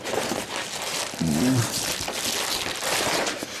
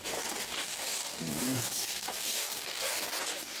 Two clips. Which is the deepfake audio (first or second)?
second